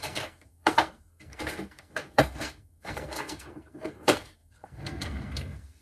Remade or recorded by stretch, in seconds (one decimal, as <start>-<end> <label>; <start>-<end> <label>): 0.0-5.8 remade